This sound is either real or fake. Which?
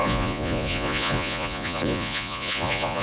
fake